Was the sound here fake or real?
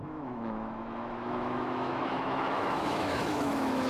fake